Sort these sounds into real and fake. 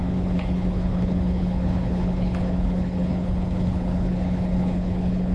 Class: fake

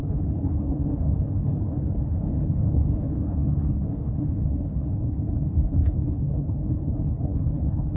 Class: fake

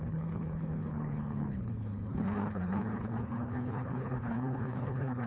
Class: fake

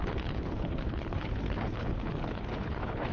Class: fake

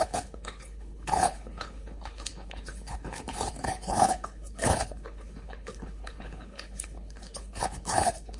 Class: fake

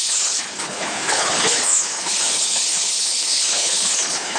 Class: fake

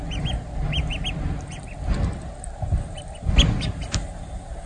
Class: real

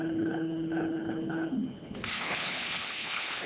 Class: fake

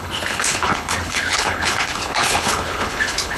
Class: fake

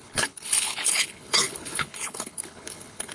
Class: fake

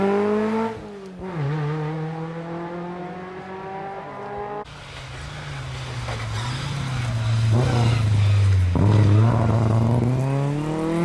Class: real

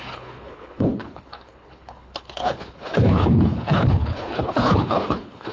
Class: fake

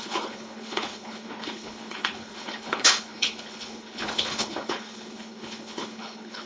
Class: fake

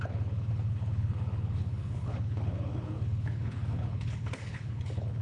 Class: fake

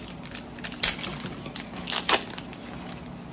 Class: real